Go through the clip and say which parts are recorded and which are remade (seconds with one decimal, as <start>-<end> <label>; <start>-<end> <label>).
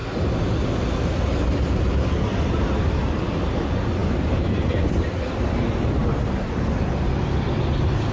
0.0-8.1 recorded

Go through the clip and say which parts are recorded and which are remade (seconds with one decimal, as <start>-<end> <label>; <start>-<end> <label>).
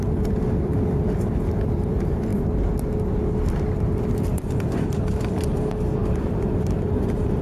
0.0-2.3 remade; 2.3-5.1 recorded; 5.1-6.0 remade; 6.0-6.9 recorded; 6.9-7.4 remade